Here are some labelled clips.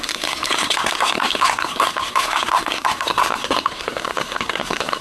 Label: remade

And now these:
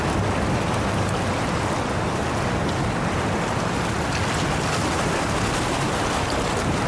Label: recorded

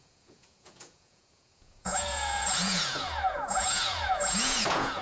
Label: remade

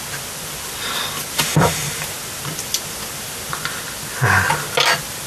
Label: recorded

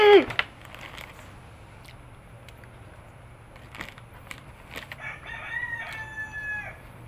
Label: recorded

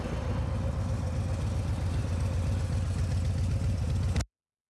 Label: recorded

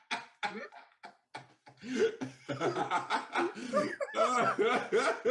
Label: recorded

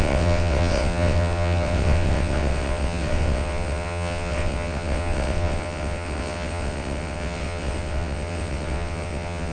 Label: remade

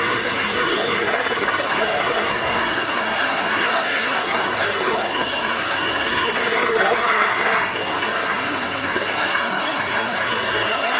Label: remade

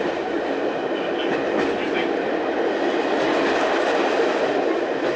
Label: recorded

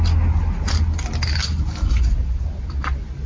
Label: recorded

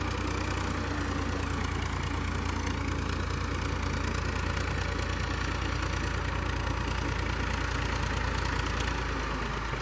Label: recorded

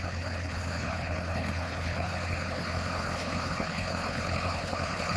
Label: remade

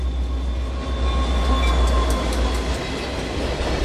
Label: recorded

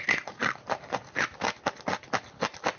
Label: recorded